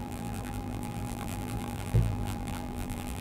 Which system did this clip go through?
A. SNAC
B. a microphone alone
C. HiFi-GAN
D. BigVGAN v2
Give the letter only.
D